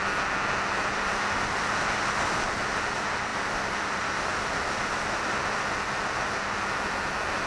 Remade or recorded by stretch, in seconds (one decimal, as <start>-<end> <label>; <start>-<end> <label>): 0.0-7.5 recorded